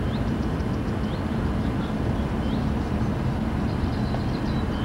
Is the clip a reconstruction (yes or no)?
no